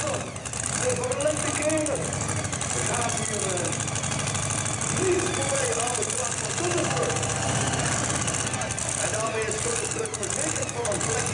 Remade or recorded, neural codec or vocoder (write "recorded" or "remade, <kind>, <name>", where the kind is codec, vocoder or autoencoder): recorded